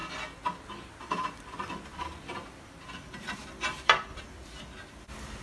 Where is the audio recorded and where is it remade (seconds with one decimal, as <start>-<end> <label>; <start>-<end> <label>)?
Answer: 0.0-5.4 recorded